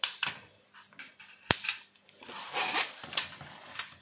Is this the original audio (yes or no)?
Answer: yes